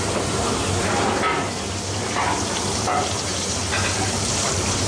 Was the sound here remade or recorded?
remade